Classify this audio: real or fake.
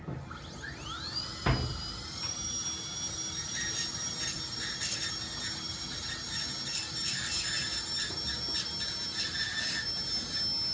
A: real